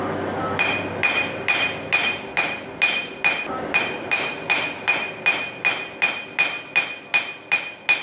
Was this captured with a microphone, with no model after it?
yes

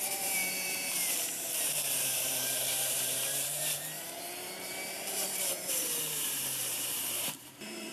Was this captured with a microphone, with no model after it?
no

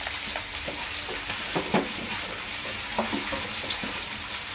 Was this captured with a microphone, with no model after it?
no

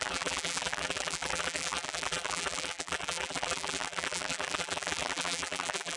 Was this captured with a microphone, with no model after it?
no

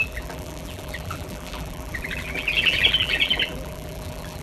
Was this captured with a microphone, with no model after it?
no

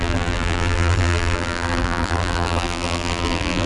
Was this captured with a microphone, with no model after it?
no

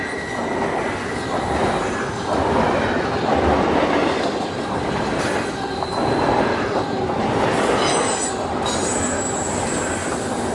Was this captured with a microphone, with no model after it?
yes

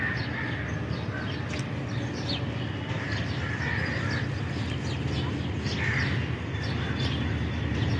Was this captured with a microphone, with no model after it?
yes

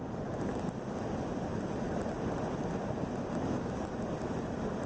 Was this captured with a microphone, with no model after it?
yes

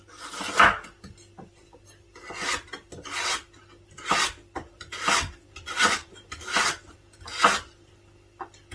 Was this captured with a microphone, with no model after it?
no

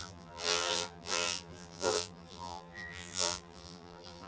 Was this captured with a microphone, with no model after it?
no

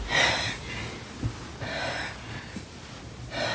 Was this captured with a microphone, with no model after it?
yes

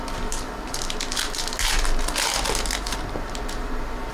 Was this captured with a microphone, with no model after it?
yes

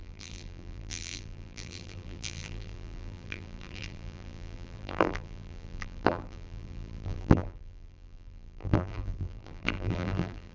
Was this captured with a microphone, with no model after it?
no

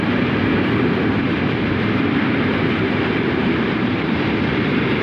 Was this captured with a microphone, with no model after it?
no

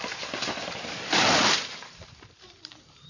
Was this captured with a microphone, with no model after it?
no